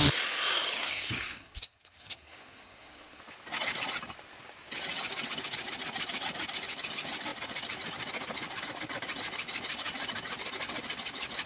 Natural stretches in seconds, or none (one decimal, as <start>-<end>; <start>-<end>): 0.0-0.8; 3.2-11.5